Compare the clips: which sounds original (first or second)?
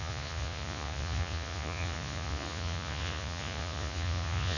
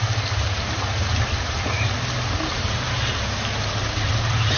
second